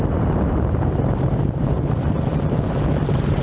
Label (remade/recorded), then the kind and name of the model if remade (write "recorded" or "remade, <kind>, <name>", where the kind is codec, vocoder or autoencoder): remade, vocoder, BigVGAN v2